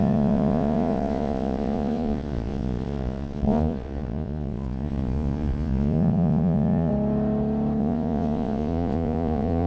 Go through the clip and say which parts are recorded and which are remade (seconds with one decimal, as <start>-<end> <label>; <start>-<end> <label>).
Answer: 0.0-6.9 remade; 6.9-7.8 recorded; 7.8-9.7 remade